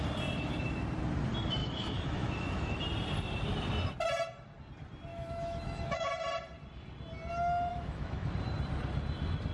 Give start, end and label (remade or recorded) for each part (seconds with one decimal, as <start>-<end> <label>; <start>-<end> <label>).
0.0-1.6 recorded; 1.6-2.8 remade; 2.8-5.1 recorded; 5.1-6.1 remade; 6.1-7.7 recorded; 7.7-8.3 remade; 8.3-9.5 recorded